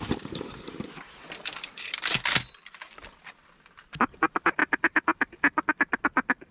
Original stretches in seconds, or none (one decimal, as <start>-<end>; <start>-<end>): 0.0-6.5